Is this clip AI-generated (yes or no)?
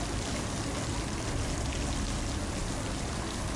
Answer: no